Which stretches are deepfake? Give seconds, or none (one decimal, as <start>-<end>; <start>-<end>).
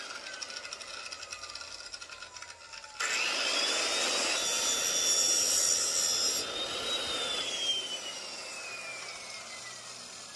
none